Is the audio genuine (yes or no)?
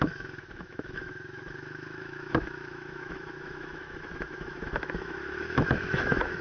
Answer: no